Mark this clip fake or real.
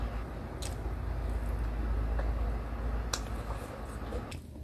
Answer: real